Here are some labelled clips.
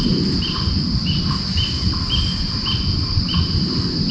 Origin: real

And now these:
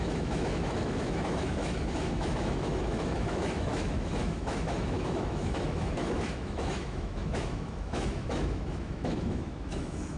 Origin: fake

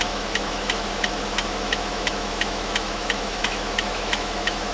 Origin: fake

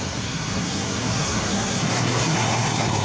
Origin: fake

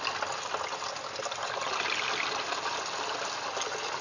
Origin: real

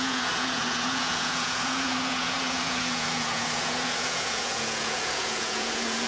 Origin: fake